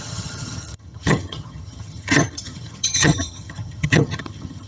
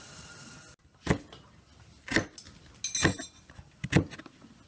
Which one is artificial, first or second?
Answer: first